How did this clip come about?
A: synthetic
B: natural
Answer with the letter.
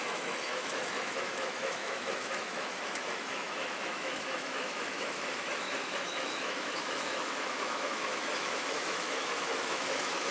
A